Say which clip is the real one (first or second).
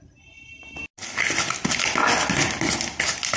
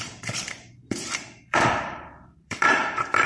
first